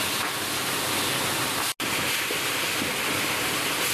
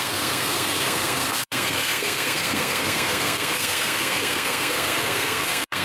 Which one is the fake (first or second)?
second